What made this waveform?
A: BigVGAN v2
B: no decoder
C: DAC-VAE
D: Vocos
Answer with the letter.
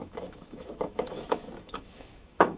C